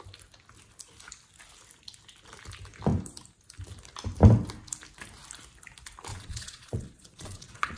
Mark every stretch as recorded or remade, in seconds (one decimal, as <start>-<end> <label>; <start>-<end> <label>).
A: 0.0-6.1 recorded; 6.1-7.8 remade